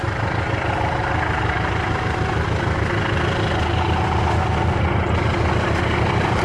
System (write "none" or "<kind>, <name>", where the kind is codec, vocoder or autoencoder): none